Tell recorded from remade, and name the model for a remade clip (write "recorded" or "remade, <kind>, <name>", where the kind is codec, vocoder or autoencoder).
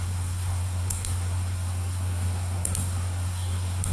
remade, codec, SNAC